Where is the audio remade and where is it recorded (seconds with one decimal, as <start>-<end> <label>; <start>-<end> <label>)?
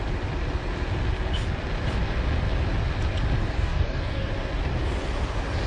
0.0-3.4 recorded; 3.4-4.3 remade; 4.3-5.7 recorded